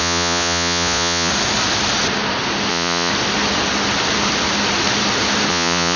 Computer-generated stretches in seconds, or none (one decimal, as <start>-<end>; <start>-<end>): 0.0-1.3; 2.7-3.1; 5.5-6.0